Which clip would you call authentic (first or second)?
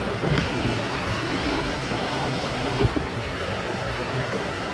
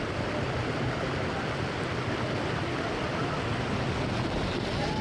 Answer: second